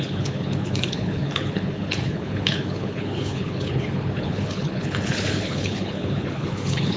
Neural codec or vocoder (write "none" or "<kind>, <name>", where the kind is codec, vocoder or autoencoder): codec, HILCodec